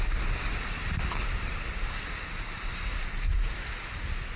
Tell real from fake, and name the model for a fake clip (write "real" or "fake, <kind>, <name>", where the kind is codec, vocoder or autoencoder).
real